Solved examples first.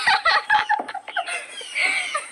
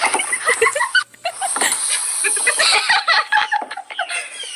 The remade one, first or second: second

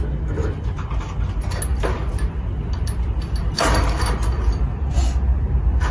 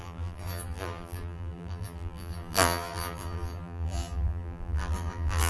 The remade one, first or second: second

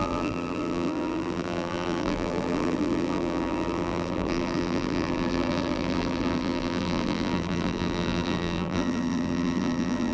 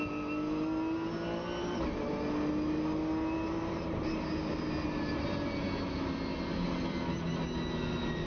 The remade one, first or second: first